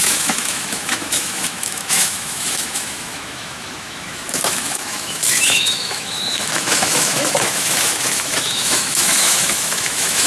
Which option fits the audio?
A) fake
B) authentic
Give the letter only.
A